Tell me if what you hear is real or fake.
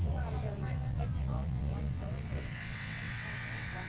fake